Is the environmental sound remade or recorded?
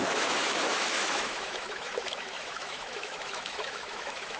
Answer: remade